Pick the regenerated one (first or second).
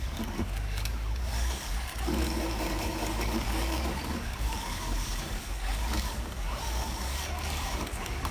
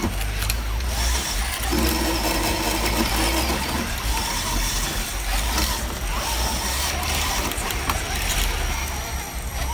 first